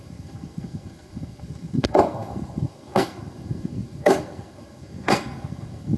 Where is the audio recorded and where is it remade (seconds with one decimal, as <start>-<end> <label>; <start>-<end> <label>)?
0.0-6.0 remade